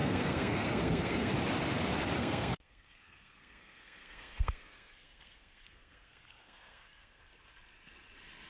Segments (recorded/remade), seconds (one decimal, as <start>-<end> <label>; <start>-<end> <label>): 0.0-1.3 remade; 1.3-2.2 recorded; 2.2-7.2 remade; 7.2-8.5 recorded